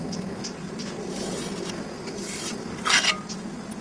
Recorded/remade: recorded